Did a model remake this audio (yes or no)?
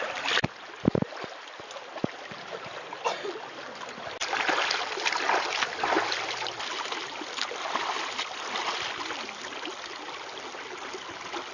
no